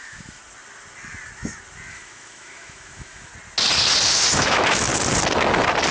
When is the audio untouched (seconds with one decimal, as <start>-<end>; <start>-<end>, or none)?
0.4-1.9; 3.3-4.3; 4.9-5.9